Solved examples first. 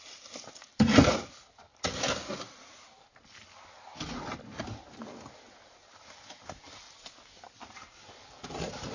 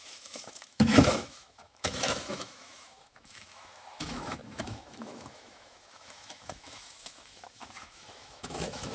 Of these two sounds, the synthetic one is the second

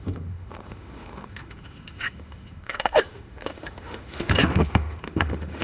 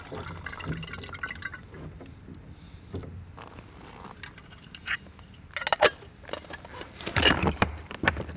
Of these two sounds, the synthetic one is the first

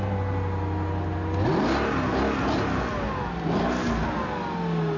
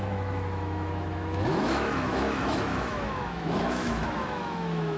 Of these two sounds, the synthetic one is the second